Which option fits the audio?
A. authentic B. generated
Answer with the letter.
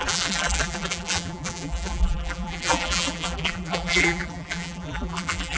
B